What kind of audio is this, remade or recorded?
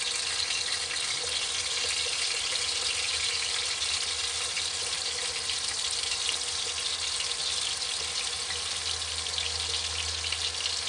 recorded